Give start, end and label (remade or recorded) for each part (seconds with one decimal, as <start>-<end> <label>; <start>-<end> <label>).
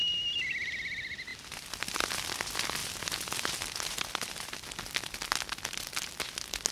0.0-6.7 recorded